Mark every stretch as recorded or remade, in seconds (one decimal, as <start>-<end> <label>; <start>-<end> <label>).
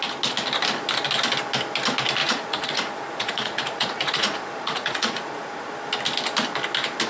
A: 0.0-2.2 recorded; 2.2-5.7 remade; 5.7-7.1 recorded